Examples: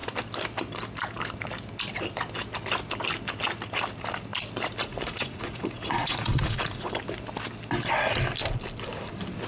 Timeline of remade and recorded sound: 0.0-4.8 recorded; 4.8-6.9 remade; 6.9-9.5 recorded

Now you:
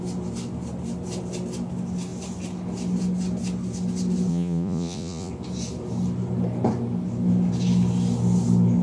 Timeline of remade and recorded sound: 0.0-4.3 recorded; 4.3-5.3 remade; 5.3-8.8 recorded

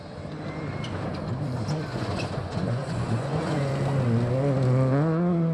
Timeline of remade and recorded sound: 0.0-1.9 recorded; 1.9-3.7 remade; 3.7-5.5 recorded

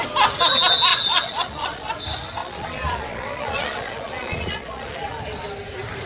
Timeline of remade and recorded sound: 0.0-0.9 recorded; 0.9-1.9 remade; 1.9-2.4 recorded; 2.4-5.2 remade; 5.2-6.1 recorded

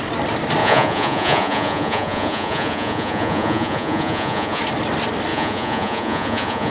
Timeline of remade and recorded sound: 0.0-0.6 recorded; 0.6-4.6 remade; 4.6-5.3 recorded; 5.3-6.7 remade

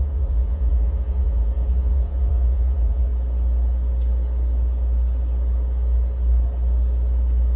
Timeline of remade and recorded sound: 0.0-3.1 remade; 3.1-7.6 recorded

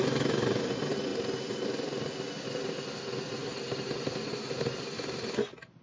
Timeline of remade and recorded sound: 0.0-5.8 recorded